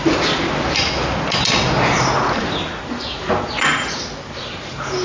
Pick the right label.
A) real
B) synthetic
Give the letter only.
A